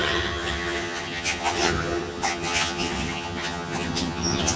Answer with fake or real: fake